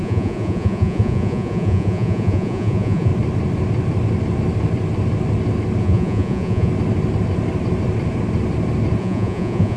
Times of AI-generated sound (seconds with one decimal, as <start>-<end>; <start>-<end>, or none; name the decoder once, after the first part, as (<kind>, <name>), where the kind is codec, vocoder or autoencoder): 0.0-3.1 (vocoder, Vocos); 5.8-6.7; 9.0-9.8